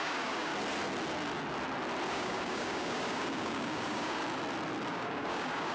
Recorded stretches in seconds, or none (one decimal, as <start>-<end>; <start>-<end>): 0.5-2.1; 4.2-4.9